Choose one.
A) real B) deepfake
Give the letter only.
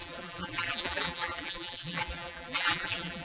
B